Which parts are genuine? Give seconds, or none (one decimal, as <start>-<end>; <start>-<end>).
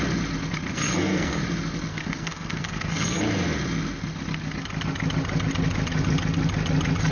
0.0-0.7; 1.4-1.9; 3.2-7.1